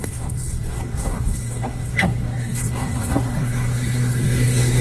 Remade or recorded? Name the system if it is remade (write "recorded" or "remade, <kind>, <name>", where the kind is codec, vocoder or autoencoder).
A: remade, codec, SNAC